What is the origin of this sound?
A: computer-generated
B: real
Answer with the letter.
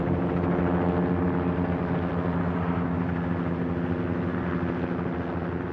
B